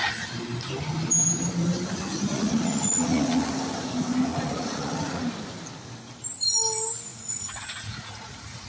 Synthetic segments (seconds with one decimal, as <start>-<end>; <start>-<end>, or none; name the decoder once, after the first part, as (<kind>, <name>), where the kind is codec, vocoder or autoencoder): 2.3-3.5 (vocoder, Vocos); 4.3-5.2; 7.1-8.7